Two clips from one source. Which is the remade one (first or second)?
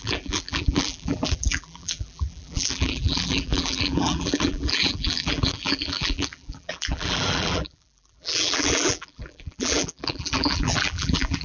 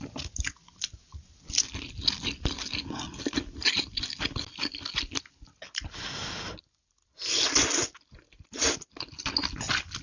first